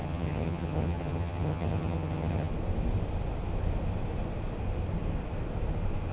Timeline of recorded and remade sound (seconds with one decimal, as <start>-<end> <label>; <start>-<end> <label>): 0.0-2.5 remade; 2.5-6.1 recorded